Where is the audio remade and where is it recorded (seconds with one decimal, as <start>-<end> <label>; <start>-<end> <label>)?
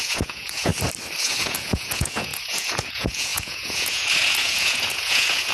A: 0.0-0.7 remade; 0.7-1.2 recorded; 1.2-5.5 remade